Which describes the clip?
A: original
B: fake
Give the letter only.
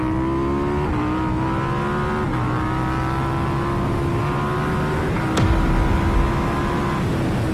A